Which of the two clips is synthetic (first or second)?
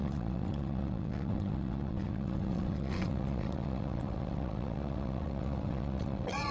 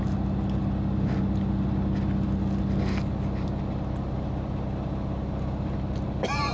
first